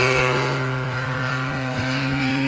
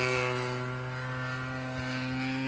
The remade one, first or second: first